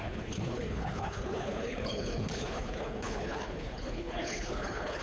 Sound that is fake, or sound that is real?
fake